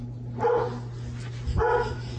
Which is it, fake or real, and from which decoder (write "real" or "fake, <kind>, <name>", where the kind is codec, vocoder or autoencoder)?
real